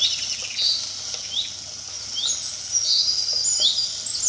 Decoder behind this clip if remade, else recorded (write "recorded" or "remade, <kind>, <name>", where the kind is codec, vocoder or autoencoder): recorded